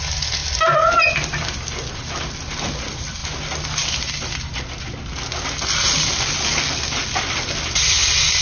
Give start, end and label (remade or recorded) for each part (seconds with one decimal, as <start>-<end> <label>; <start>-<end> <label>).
0.0-8.4 recorded